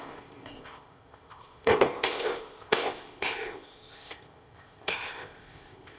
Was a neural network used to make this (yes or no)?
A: yes